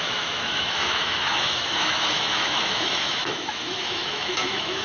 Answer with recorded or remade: remade